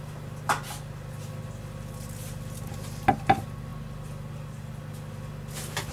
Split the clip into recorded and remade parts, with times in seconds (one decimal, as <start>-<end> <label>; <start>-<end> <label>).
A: 0.0-5.9 recorded